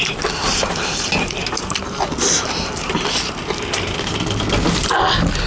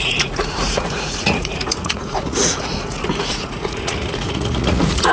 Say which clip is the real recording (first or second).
first